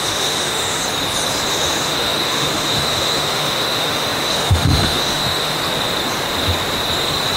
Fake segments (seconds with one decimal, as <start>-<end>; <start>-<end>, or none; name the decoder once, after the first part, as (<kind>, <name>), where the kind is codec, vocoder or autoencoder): 0.0-0.8 (autoencoder, DAC-VAE); 1.5-5.6

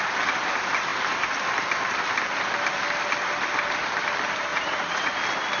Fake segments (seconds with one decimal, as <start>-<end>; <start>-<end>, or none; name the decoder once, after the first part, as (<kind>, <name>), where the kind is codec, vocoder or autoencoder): 4.5-5.1 (vocoder, Vocos)

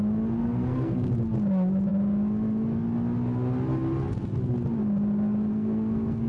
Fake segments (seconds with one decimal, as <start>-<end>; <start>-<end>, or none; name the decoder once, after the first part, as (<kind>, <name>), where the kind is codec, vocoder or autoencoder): 0.4-1.1 (codec, SNAC); 5.5-6.3